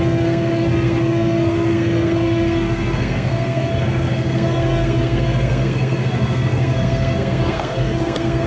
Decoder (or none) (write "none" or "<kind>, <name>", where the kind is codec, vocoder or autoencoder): codec, SNAC